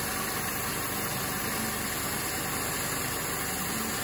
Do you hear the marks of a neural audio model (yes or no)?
no